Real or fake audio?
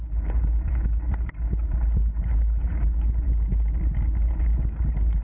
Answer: real